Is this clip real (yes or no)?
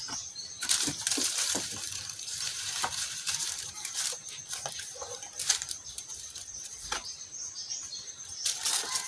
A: no